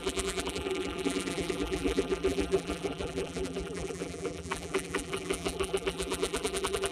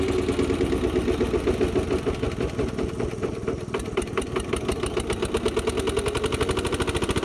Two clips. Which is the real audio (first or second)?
second